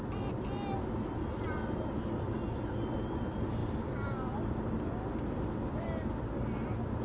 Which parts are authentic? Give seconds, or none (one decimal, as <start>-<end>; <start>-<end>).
0.0-7.0